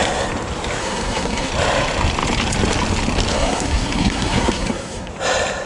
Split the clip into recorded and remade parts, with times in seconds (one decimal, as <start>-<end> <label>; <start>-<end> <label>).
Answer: 0.0-0.8 recorded; 0.8-1.5 remade; 1.5-3.3 recorded; 3.3-5.1 remade; 5.1-5.7 recorded